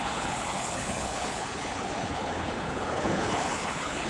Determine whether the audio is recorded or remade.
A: remade